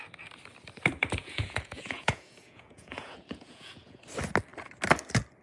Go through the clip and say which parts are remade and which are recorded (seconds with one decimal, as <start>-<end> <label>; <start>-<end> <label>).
0.0-1.2 recorded; 1.2-4.0 remade; 4.0-5.4 recorded